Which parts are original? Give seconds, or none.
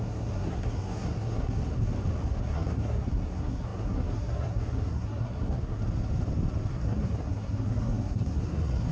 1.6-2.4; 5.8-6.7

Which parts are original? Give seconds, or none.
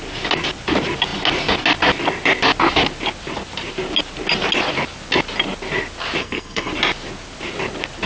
0.0-6.2; 6.7-8.1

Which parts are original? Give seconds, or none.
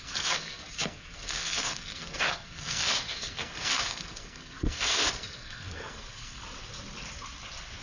6.4-7.8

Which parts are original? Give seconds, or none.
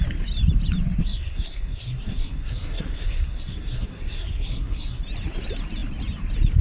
0.0-1.0; 5.0-6.6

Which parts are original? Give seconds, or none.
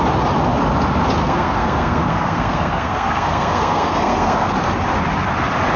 0.0-1.2; 4.5-5.8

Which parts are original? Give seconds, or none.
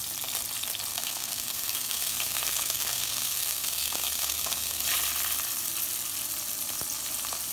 0.0-0.9; 4.8-7.5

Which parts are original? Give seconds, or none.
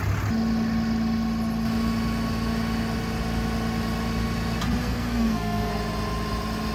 0.0-4.8; 5.7-6.7